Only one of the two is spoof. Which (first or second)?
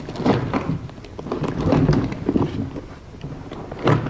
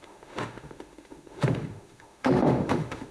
second